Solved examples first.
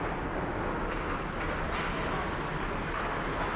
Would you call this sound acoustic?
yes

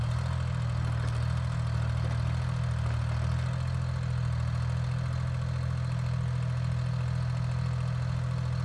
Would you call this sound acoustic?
yes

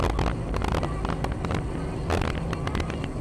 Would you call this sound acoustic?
yes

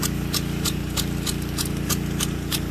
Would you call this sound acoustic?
no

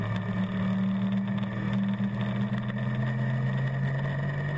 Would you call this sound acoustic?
yes